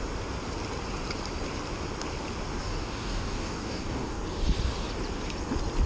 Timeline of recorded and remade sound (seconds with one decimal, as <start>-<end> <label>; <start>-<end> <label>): 0.0-2.6 recorded; 2.6-4.2 remade; 4.2-5.9 recorded